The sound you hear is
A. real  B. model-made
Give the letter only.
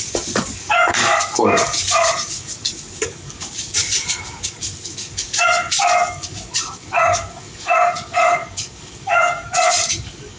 B